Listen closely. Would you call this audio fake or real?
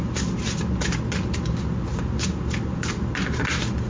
real